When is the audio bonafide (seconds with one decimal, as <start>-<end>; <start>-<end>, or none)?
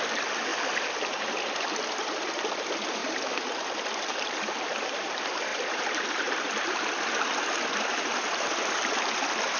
0.5-1.8; 3.0-4.6